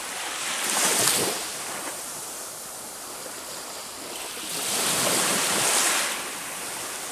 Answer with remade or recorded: recorded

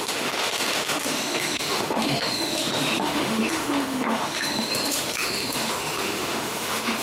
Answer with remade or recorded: remade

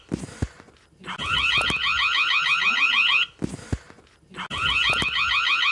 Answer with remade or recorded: recorded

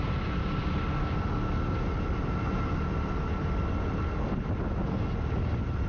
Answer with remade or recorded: recorded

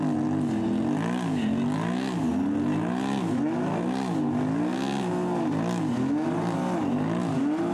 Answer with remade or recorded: recorded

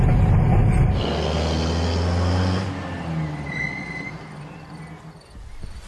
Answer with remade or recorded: recorded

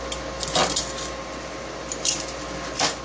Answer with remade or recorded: recorded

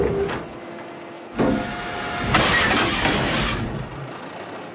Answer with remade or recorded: recorded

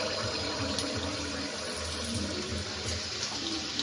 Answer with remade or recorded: recorded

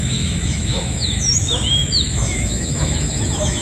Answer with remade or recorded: remade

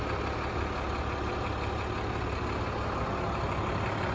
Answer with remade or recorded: recorded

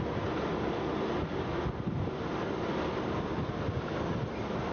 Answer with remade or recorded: recorded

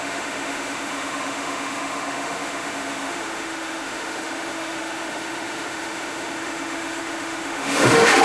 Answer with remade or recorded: remade